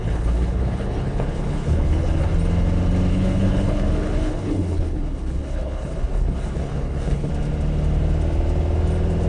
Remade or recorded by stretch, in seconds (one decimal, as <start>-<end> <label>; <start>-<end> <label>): 0.0-2.3 remade; 2.3-3.1 recorded; 3.1-7.3 remade; 7.3-9.3 recorded